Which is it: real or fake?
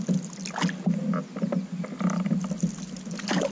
real